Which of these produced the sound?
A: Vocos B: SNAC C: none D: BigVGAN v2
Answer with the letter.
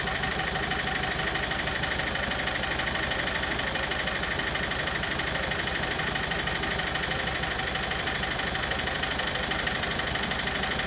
D